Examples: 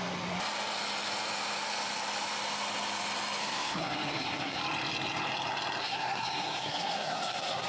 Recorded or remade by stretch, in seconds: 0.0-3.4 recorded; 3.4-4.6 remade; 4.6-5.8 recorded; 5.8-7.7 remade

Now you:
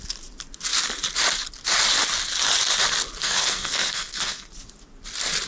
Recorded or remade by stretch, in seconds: 0.0-3.2 recorded; 3.2-4.5 remade; 4.5-5.5 recorded

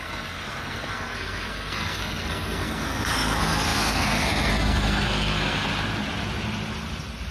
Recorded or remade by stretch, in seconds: 0.0-5.7 remade; 5.7-7.3 recorded

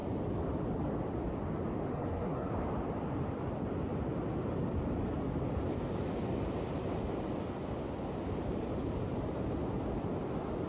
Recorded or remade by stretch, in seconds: 0.0-1.9 recorded; 1.9-2.5 remade; 2.5-10.7 recorded

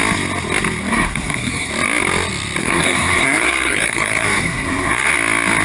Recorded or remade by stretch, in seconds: 0.0-0.9 recorded; 0.9-1.7 remade; 1.7-2.6 recorded; 2.6-5.1 remade; 5.1-5.6 recorded

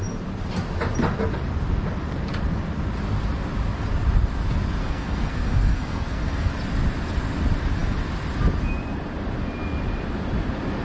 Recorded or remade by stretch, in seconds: 0.0-4.8 recorded; 4.8-6.5 remade; 6.5-10.8 recorded

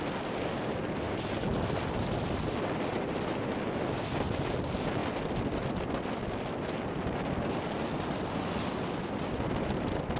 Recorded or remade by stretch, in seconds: 0.0-10.2 recorded

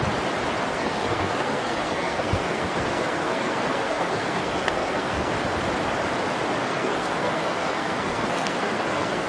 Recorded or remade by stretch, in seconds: 0.0-0.7 recorded; 0.7-5.3 remade; 5.3-6.6 recorded; 6.6-9.3 remade